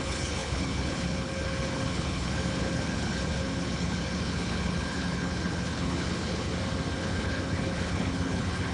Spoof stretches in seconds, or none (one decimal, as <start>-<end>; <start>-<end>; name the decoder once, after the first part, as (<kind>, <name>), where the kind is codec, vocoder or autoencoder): 0.0-6.5 (codec, HILCodec); 7.0-8.7